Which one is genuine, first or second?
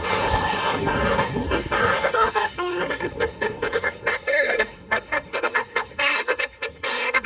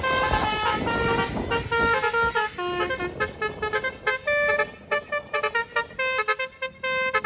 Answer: second